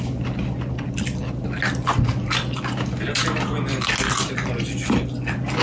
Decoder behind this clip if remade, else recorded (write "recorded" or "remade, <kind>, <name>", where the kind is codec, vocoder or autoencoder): recorded